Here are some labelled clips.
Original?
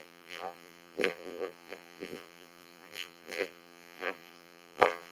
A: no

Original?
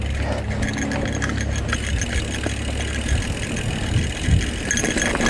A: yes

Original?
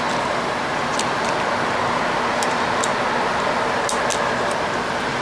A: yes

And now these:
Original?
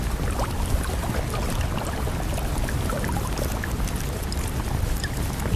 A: yes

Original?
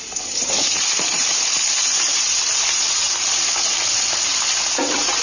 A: no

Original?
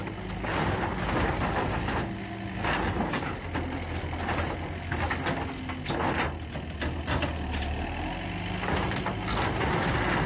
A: yes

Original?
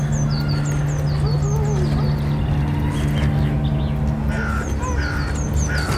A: yes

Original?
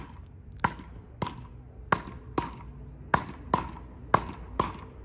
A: yes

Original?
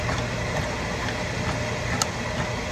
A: yes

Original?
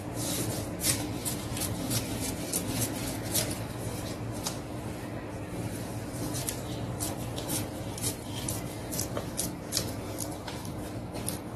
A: yes